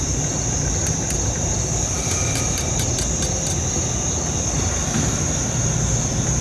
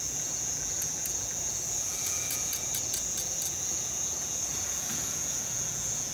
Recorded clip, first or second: first